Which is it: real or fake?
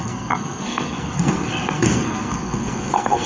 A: fake